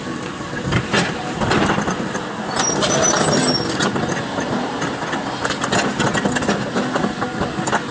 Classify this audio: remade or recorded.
recorded